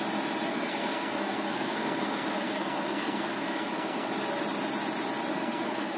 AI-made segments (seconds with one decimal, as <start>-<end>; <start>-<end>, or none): 0.5-4.1; 5.3-6.0